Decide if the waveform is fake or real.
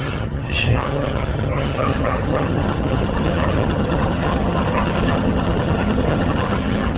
fake